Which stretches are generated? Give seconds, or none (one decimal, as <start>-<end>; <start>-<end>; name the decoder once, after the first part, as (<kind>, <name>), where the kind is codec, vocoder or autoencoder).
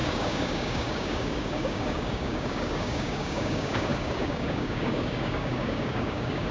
0.0-6.5 (codec, DAC)